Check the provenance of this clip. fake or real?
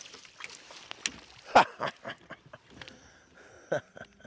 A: real